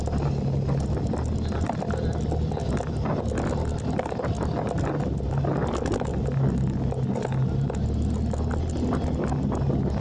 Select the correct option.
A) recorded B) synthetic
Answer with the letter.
A